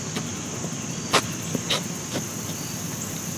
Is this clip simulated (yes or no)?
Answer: no